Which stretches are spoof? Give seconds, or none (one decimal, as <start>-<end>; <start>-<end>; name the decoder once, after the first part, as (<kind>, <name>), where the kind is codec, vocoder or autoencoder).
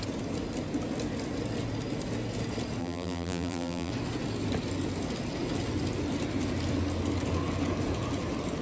2.8-3.9 (vocoder, BigVGAN v2)